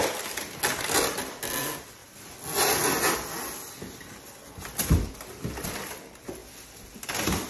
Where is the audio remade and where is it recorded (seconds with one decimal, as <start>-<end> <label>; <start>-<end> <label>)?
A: 0.0-7.5 recorded